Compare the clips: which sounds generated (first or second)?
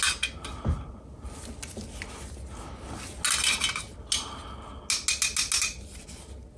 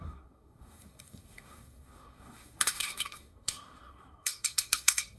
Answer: second